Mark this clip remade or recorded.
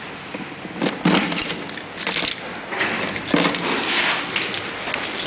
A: recorded